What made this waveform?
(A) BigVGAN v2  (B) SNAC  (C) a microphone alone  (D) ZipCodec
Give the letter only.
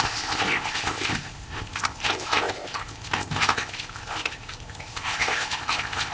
D